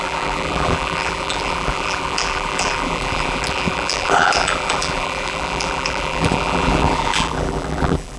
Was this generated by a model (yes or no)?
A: yes